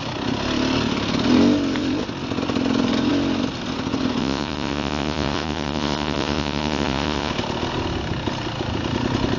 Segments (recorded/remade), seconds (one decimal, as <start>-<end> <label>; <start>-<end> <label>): 0.0-4.2 recorded; 4.2-7.3 remade; 7.3-9.4 recorded